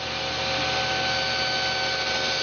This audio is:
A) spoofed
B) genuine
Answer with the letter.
B